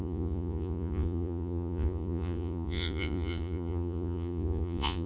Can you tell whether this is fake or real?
fake